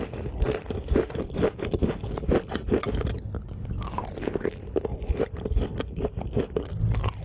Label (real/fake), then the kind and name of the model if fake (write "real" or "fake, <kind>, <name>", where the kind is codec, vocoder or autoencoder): real